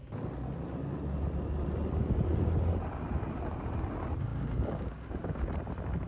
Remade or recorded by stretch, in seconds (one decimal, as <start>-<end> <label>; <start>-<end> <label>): 0.0-4.3 recorded; 4.3-5.5 remade; 5.5-6.1 recorded